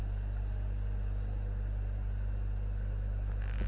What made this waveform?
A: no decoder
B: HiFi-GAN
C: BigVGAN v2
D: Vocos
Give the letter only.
A